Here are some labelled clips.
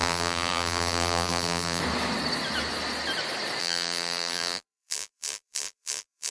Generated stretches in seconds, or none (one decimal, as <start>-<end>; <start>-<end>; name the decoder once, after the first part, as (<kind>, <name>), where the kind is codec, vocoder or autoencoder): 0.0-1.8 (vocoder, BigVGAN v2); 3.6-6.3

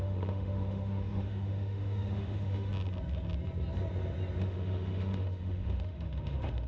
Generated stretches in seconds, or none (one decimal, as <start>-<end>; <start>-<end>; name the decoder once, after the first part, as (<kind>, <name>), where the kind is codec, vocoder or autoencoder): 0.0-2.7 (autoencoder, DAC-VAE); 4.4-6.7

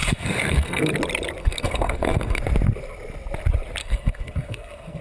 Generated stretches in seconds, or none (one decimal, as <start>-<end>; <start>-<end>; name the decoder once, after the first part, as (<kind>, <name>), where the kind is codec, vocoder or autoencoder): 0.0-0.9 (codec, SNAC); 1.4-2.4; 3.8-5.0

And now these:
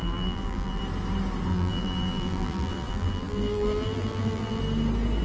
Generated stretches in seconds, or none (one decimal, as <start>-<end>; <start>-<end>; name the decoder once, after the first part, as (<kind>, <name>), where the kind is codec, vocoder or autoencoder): 0.0-0.8 (vocoder, BigVGAN v2); 1.5-4.6

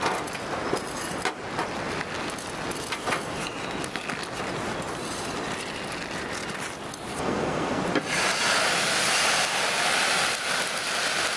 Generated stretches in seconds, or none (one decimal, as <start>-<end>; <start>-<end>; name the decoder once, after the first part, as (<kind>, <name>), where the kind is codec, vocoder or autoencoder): 7.1-7.8 (codec, SNAC)